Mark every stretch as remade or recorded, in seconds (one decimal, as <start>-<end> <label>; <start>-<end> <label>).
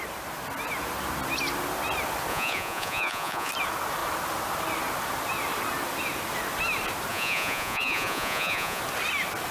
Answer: 0.0-2.3 recorded; 2.3-3.5 remade; 3.5-7.1 recorded; 7.1-8.8 remade; 8.8-9.5 recorded